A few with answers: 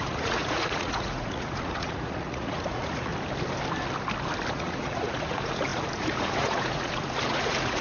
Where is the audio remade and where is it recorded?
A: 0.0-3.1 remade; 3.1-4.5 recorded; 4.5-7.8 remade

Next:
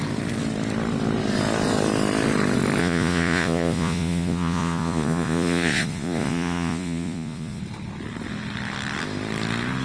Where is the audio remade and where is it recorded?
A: 0.0-2.8 recorded; 2.8-7.6 remade; 7.6-9.8 recorded